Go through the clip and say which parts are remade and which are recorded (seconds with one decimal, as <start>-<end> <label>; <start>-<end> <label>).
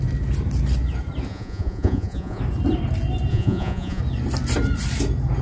0.0-1.3 recorded; 1.3-2.4 remade; 2.4-3.3 recorded; 3.3-4.0 remade; 4.0-5.4 recorded